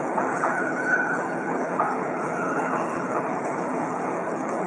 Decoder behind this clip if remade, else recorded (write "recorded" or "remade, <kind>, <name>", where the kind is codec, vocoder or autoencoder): remade, codec, HILCodec